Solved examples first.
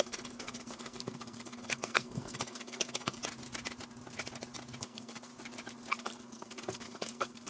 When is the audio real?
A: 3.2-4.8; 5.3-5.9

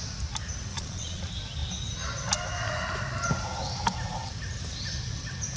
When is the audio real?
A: 0.0-0.7; 1.2-5.6

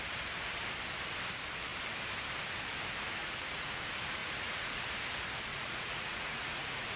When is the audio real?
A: 0.0-3.2; 3.8-4.2; 4.8-5.5

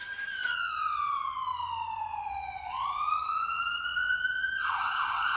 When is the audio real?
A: 0.0-0.5; 1.1-2.1

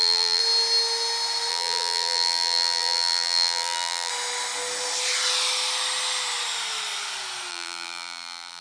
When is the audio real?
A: 0.4-1.5; 4.1-7.5

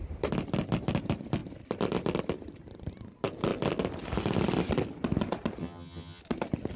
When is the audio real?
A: 0.0-5.6; 6.2-6.8

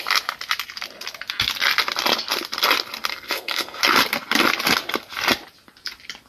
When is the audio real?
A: 0.0-3.1; 3.8-6.3